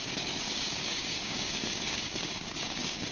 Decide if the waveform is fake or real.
fake